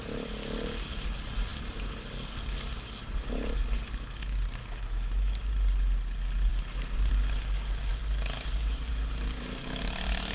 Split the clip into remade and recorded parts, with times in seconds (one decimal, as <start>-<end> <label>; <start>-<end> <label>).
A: 0.0-4.6 recorded; 4.6-5.4 remade; 5.4-10.3 recorded